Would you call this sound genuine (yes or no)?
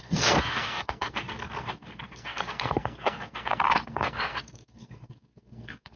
no